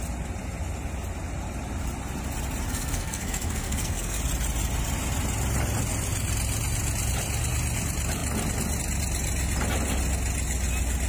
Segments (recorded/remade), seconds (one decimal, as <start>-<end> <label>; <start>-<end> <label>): 0.0-2.7 recorded; 2.7-4.2 remade; 4.2-11.1 recorded